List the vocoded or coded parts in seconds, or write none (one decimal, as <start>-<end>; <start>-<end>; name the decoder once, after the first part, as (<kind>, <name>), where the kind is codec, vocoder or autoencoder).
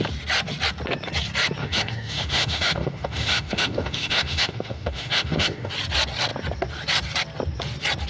1.6-5.7 (autoencoder, DAC-VAE)